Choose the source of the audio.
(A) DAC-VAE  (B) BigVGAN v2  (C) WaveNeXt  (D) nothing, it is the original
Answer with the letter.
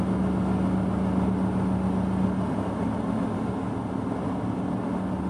D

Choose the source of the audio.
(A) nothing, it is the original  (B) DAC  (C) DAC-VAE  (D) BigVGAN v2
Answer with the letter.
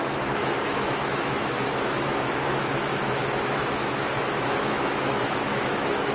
C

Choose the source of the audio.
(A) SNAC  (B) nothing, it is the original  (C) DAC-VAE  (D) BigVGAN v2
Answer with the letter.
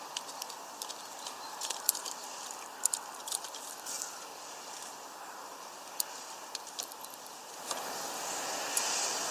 B